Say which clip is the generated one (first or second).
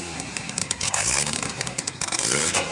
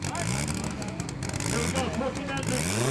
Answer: first